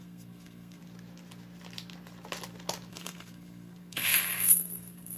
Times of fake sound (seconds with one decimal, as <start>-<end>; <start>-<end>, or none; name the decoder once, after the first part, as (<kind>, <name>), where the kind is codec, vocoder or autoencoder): 0.0-0.8 (codec, SNAC); 2.9-5.2